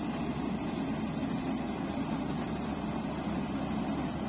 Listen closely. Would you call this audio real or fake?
real